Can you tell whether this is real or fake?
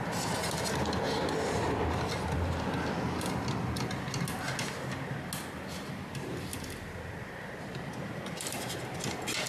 real